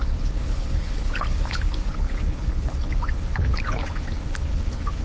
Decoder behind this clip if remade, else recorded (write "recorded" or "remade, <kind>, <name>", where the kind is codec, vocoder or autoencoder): remade, codec, HILCodec